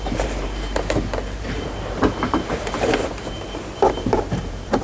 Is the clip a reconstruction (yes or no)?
yes